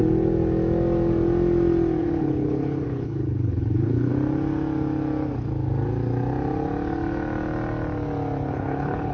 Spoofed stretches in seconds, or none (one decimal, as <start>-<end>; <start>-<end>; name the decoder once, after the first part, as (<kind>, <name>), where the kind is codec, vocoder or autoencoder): 2.0-4.1 (codec, HILCodec); 8.5-9.1